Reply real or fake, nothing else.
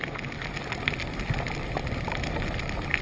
real